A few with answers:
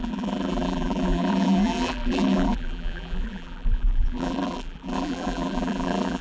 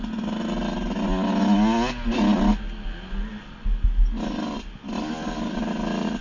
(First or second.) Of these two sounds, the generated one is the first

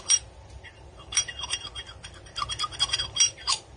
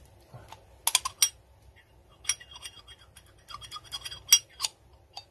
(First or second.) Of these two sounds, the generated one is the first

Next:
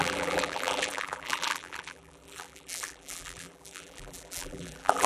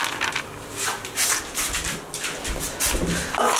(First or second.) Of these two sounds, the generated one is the first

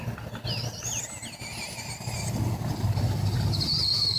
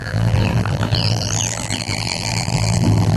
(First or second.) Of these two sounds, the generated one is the second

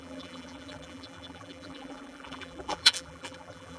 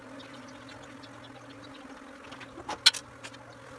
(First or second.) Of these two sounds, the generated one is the first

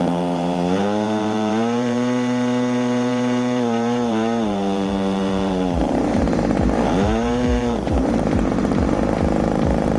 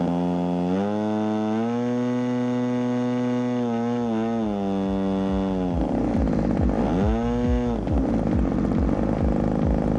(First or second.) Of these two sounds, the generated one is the first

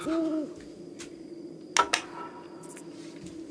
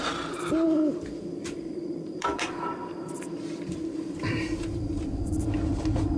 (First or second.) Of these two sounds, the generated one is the second